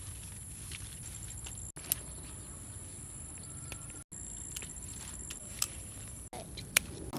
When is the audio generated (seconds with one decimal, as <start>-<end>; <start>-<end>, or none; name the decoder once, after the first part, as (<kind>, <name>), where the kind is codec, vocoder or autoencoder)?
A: 5.4-6.3 (vocoder, BigVGAN v2)